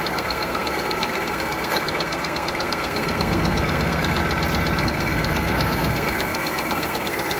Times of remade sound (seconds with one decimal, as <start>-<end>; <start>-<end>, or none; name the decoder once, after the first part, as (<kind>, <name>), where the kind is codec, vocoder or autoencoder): 0.0-4.2 (codec, SNAC); 4.8-7.4